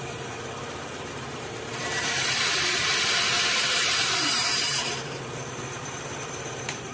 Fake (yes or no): yes